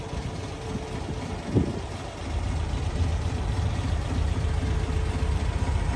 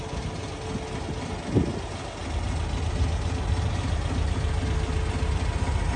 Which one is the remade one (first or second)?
first